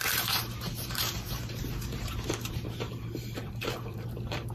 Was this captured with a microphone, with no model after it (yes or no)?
no